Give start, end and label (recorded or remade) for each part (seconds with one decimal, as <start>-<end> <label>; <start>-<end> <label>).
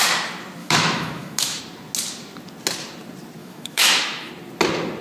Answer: 0.0-0.6 recorded; 0.6-1.6 remade; 1.6-3.4 recorded; 3.4-4.3 remade; 4.3-5.0 recorded